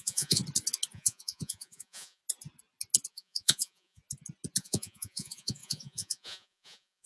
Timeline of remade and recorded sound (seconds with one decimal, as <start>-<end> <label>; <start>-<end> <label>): 0.0-0.4 remade; 0.4-0.9 recorded; 0.9-2.2 remade; 2.2-3.1 recorded; 3.1-4.0 remade; 4.0-4.6 recorded; 4.6-7.1 remade